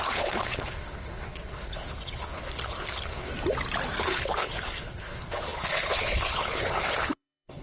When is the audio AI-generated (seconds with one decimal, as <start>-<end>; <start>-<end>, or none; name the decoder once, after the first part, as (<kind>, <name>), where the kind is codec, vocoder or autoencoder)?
0.0-3.3 (codec, HILCodec); 4.0-7.6